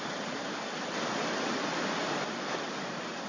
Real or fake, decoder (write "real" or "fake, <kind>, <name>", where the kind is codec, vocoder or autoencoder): real